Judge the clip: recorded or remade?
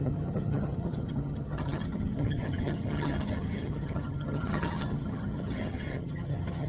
remade